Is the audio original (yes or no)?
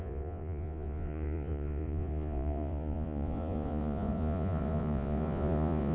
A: no